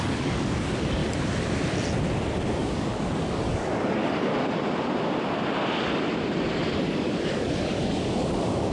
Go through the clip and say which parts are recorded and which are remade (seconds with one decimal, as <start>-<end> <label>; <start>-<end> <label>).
0.0-1.0 remade; 1.0-2.5 recorded; 2.5-4.3 remade; 4.3-6.8 recorded; 6.8-8.7 remade